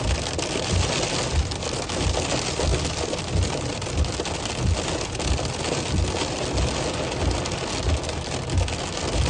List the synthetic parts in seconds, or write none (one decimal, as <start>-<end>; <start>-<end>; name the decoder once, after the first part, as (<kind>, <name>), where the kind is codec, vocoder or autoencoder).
none